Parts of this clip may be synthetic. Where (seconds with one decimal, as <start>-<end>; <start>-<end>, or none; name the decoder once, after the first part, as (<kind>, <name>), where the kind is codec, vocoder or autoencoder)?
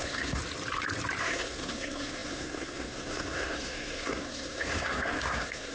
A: 0.0-0.4 (codec, SNAC); 1.2-5.7